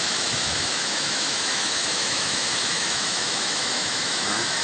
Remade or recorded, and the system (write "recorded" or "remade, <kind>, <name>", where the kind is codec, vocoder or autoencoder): remade, autoencoder, DAC-VAE